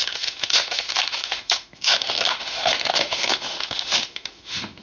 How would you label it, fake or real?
fake